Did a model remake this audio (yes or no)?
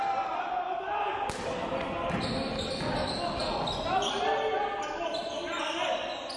no